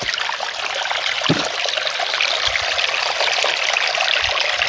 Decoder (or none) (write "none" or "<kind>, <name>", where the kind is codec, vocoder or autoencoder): none